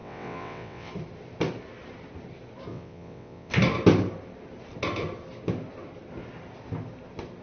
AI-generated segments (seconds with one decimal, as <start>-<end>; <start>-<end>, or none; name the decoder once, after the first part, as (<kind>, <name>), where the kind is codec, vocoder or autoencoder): 0.0-0.9 (vocoder, WaveNeXt); 2.7-3.5